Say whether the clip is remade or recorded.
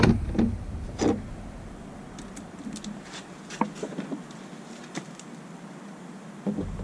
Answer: recorded